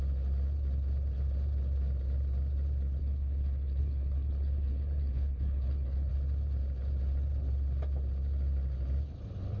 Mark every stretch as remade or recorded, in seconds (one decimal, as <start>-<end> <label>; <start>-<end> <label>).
0.0-3.0 recorded; 3.0-6.1 remade; 6.1-9.6 recorded